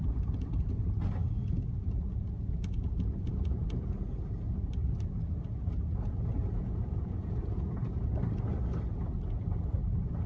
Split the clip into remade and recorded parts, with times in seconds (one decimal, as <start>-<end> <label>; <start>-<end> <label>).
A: 0.0-1.2 recorded; 1.2-4.3 remade; 4.3-5.9 recorded; 5.9-8.0 remade; 8.0-10.3 recorded